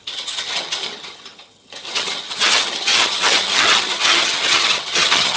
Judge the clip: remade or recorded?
remade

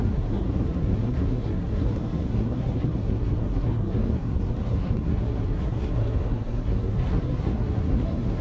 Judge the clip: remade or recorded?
remade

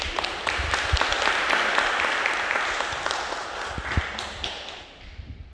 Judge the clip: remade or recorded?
recorded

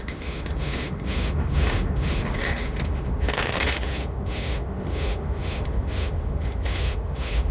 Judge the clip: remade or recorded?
remade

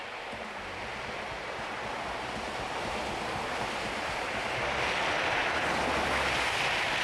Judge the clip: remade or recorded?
recorded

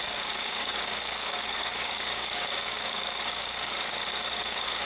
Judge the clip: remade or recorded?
remade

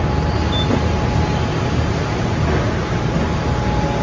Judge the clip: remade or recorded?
recorded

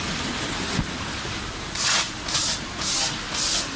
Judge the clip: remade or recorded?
recorded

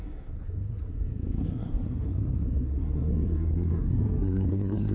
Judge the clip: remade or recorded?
remade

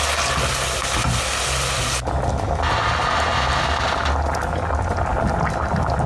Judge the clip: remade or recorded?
recorded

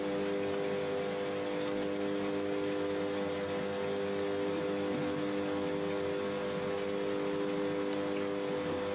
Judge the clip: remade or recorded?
recorded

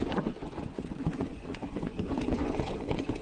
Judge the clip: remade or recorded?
remade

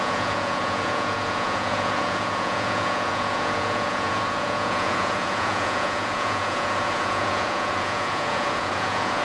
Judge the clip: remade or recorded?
remade